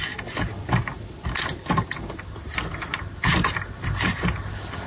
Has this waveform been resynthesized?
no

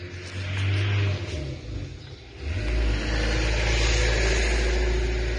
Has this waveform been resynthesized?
no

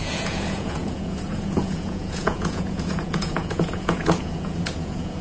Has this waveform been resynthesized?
yes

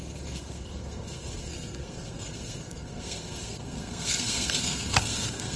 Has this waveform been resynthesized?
yes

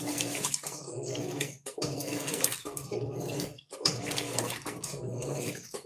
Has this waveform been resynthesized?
yes